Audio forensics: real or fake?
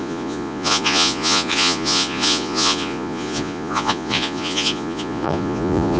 fake